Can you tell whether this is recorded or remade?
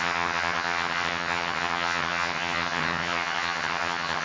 remade